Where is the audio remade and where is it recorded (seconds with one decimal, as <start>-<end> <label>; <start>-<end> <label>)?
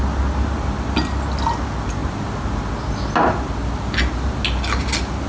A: 0.0-5.3 recorded